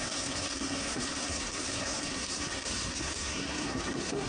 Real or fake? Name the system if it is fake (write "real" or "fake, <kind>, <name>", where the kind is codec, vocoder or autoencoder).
fake, codec, SNAC